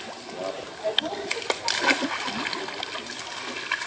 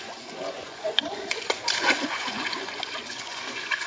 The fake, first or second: second